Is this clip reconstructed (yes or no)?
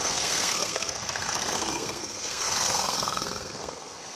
yes